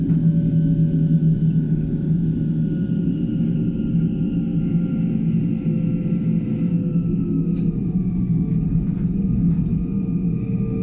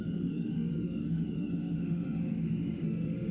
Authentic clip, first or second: first